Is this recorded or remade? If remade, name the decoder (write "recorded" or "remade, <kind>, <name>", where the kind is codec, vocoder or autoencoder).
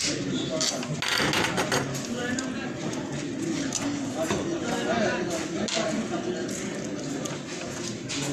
recorded